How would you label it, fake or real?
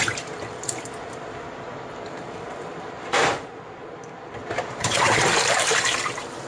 fake